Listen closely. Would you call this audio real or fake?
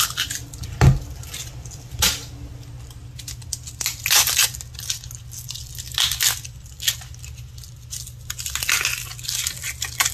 real